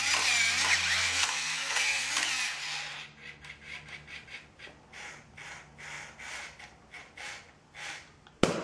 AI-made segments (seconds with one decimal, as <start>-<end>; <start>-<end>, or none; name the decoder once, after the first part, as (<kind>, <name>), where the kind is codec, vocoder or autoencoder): 1.0-2.1 (codec, SNAC)